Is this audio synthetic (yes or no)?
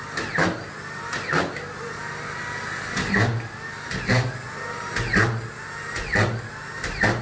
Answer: no